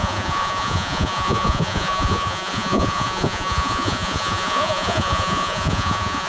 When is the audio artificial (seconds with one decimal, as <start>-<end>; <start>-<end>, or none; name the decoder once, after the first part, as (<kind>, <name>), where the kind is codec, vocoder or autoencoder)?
0.0-6.3 (vocoder, Vocos)